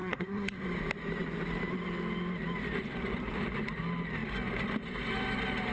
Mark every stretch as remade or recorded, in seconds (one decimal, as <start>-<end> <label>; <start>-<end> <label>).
0.0-0.6 remade; 0.6-5.7 recorded